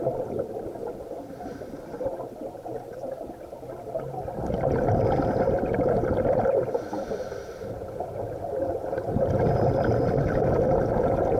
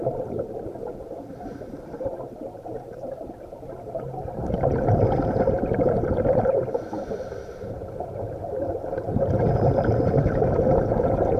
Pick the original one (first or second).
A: first